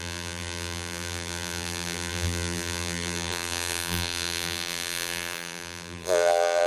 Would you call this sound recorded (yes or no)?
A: no